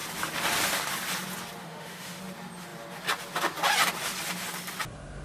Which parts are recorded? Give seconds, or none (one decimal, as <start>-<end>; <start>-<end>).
0.0-1.6; 2.2-5.2